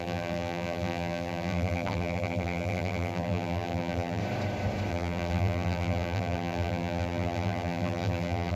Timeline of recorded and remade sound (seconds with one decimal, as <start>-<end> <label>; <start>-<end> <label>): 0.0-4.2 remade; 4.2-4.9 recorded; 4.9-8.6 remade